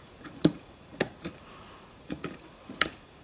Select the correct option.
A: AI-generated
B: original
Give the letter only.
A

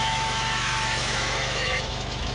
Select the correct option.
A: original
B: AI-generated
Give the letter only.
B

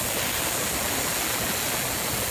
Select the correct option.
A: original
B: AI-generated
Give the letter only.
A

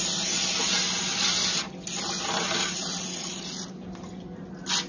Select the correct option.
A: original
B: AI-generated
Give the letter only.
A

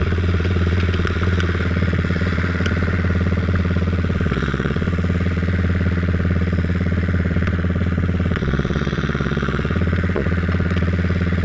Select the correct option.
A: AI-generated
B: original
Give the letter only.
A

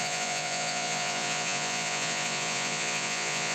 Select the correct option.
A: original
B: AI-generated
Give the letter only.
B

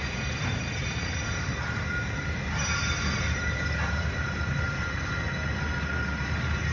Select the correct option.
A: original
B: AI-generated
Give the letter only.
A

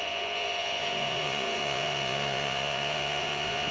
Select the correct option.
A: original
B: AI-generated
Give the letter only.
B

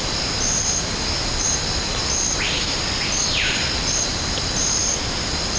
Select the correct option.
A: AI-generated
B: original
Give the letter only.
B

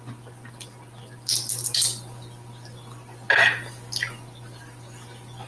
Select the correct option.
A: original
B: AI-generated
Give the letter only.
A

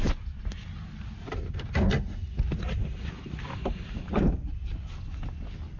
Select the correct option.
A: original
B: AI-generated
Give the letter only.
A